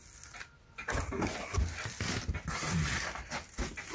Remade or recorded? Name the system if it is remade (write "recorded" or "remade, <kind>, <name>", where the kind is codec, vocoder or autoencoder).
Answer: recorded